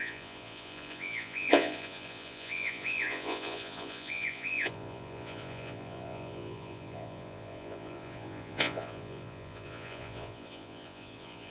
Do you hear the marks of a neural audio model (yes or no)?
yes